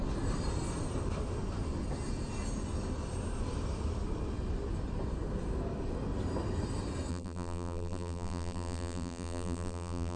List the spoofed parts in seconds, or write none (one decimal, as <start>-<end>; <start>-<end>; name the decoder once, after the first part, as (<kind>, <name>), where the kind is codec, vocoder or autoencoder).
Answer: 7.1-10.2 (vocoder, BigVGAN v2)